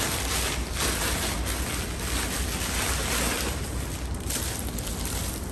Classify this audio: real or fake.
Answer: real